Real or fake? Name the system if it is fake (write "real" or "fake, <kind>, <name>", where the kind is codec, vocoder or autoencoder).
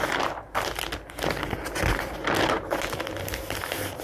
real